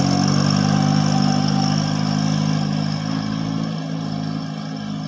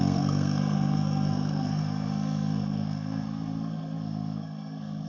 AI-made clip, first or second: second